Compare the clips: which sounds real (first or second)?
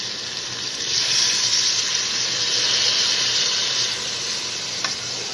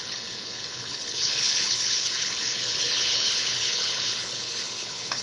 first